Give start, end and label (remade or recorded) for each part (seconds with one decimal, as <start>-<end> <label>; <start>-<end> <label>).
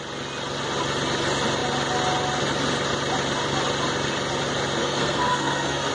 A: 0.0-4.8 recorded; 4.8-5.9 remade